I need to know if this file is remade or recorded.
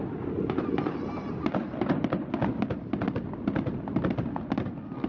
recorded